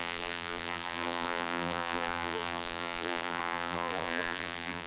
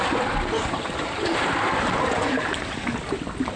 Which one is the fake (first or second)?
first